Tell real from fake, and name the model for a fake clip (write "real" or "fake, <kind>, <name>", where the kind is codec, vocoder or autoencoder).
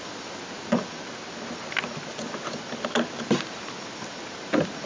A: real